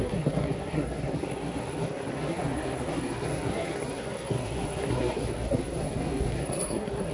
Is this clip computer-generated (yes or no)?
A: yes